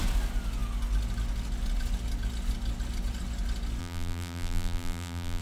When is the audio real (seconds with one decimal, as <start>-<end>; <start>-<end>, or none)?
0.0-3.8